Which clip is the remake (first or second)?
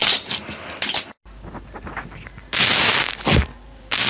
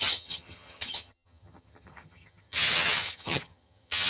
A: second